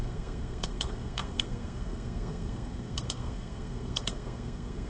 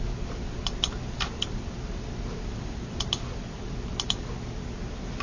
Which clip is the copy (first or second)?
first